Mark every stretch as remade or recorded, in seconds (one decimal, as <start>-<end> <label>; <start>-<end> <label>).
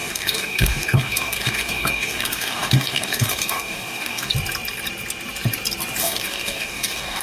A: 0.0-4.3 remade; 4.3-6.0 recorded; 6.0-7.2 remade